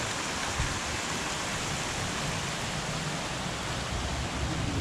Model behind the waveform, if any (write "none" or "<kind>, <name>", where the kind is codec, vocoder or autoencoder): none